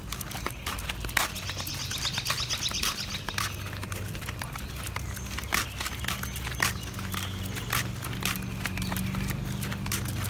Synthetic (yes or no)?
no